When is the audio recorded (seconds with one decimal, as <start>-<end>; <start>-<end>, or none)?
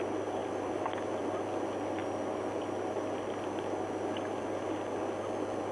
0.0-0.4; 1.2-5.7